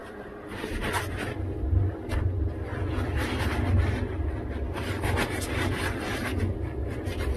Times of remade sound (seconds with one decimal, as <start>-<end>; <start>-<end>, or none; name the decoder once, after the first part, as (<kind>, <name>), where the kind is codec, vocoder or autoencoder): 0.0-2.7 (vocoder, BigVGAN v2); 5.8-7.4